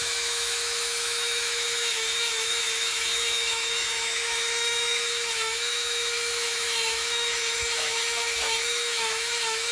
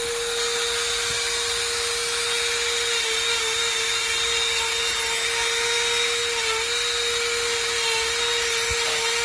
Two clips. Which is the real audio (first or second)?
second